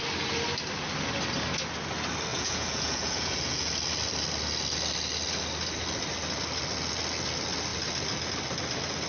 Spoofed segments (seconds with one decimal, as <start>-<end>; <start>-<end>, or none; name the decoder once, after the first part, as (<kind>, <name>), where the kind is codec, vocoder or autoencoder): 2.3-3.7 (vocoder, Vocos)